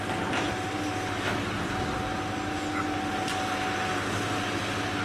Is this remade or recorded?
recorded